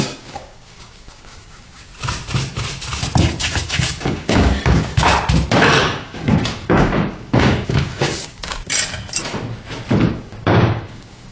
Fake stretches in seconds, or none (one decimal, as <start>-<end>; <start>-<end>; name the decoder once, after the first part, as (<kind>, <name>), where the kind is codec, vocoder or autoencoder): 0.0-1.9 (codec, DAC); 3.4-5.1; 5.8-8.6; 10.1-11.3